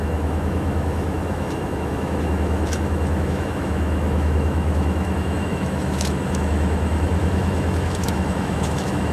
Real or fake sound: fake